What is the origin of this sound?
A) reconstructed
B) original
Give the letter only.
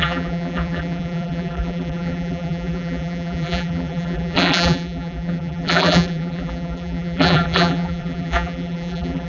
A